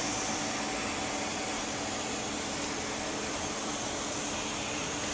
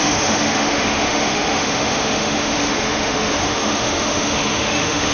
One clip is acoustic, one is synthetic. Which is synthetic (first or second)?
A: second